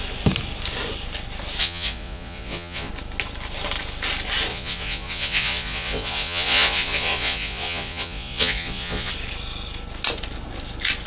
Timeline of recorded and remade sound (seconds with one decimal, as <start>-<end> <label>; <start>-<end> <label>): 0.0-1.6 recorded; 1.6-2.9 remade; 2.9-4.5 recorded; 4.5-9.1 remade; 9.1-11.1 recorded